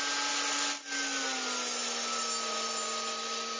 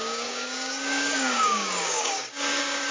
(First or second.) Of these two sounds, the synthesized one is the second